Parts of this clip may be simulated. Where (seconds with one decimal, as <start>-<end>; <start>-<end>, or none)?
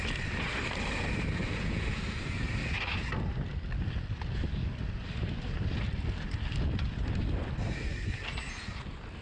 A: 1.4-2.0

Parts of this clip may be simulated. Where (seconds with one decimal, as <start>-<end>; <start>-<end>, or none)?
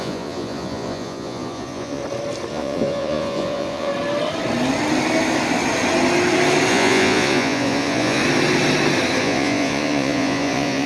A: 0.0-2.0; 2.5-3.9; 6.7-8.2; 9.2-10.9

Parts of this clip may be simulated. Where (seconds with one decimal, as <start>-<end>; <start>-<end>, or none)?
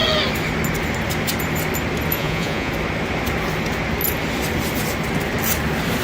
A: 2.2-2.7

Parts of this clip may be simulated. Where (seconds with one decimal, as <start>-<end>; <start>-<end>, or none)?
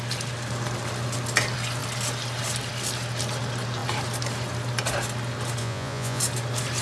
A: 5.6-6.2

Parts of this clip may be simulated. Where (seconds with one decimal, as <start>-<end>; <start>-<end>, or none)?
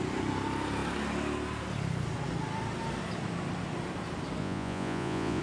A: 4.4-5.4